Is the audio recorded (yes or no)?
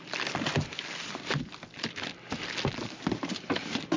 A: yes